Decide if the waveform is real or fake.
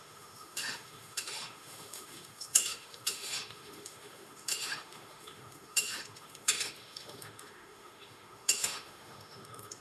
fake